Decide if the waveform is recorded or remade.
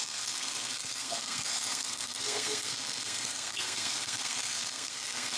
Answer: remade